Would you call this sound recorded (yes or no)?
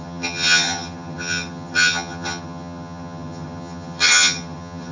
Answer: no